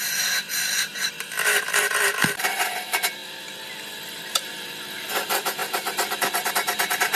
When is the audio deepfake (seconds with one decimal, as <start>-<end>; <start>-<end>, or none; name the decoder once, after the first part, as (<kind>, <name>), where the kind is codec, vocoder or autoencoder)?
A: 0.0-3.2 (vocoder, BigVGAN v2); 4.2-7.2